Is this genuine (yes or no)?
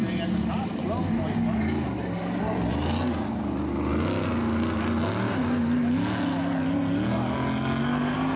yes